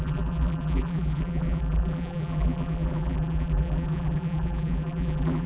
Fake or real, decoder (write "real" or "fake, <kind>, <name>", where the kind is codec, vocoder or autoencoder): fake, vocoder, BigVGAN v2